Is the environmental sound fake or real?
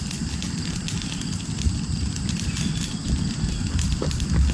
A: real